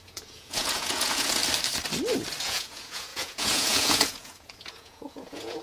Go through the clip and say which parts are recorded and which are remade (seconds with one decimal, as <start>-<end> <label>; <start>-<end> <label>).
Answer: 0.0-1.4 remade; 1.4-2.4 recorded; 2.4-5.6 remade